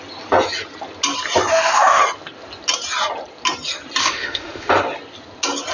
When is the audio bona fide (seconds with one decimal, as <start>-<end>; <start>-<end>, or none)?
0.0-1.5; 2.0-4.0; 4.7-5.7